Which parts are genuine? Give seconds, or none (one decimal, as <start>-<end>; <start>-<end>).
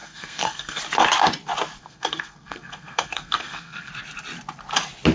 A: 0.8-1.8; 3.9-5.1